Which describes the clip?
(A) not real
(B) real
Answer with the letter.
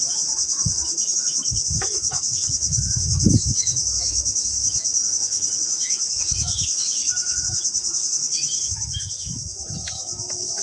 A